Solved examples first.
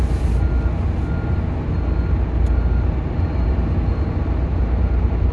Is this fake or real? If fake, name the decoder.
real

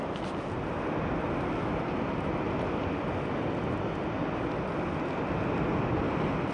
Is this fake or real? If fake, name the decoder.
real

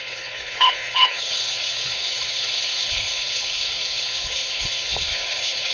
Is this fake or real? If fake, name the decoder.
fake, codec, HILCodec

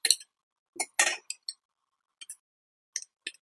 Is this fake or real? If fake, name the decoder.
real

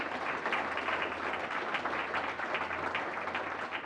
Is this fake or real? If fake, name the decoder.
real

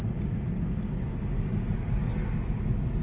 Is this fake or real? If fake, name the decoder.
real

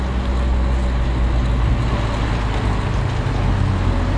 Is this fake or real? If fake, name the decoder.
real